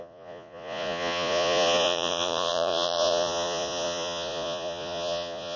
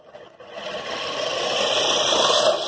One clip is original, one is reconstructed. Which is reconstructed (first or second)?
first